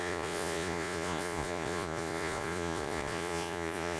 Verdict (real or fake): fake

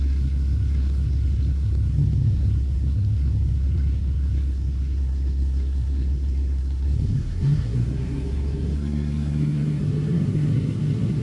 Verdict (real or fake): fake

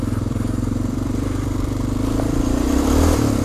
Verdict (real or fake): fake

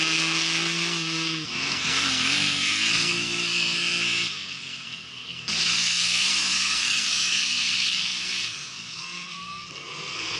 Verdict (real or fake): fake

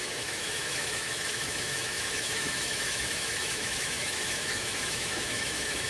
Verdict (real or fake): fake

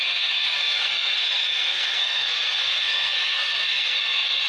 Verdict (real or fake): fake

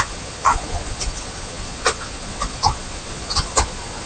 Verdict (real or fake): fake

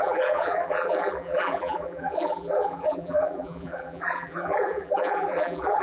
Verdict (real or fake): fake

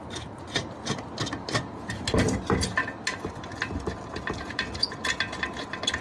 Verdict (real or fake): real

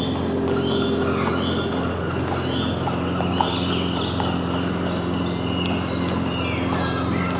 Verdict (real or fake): real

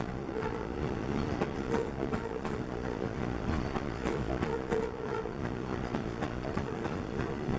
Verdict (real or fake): fake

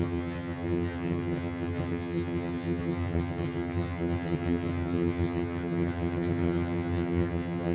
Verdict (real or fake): fake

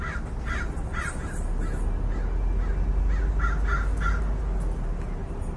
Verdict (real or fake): real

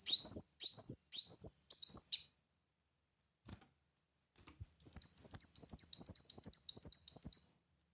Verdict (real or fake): fake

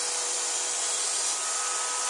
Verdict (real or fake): real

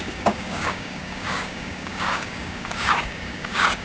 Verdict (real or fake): fake